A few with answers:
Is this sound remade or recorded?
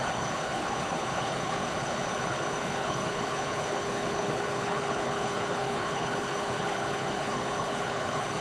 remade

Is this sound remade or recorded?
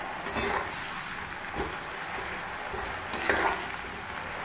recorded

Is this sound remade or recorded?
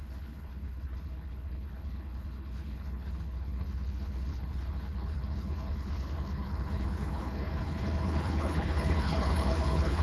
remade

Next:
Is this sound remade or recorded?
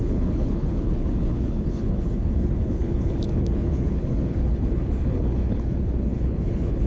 remade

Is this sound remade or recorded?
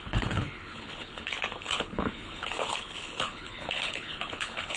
remade